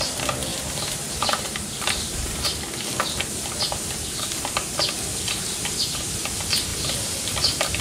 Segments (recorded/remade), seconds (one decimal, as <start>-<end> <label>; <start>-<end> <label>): 0.0-0.5 recorded; 0.5-2.9 remade; 2.9-6.7 recorded; 6.7-7.8 remade